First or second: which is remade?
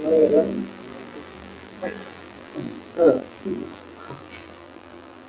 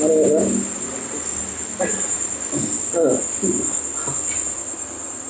first